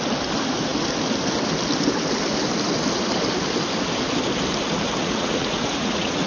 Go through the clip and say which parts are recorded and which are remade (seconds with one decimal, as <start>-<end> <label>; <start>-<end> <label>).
0.0-5.0 recorded; 5.0-6.3 remade